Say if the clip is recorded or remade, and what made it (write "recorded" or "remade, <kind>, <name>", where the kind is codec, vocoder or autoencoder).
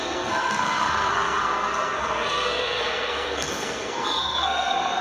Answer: remade, codec, SNAC